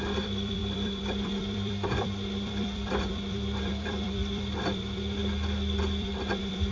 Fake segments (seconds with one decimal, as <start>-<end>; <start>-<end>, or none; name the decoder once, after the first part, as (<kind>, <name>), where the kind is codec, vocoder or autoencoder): 0.0-5.2 (vocoder, BigVGAN v2); 5.8-6.7